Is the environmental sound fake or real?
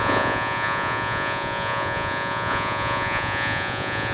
fake